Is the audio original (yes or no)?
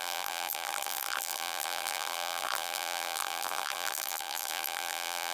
no